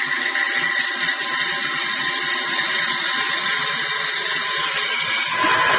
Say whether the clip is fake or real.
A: real